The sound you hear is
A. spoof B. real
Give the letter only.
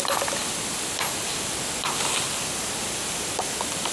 B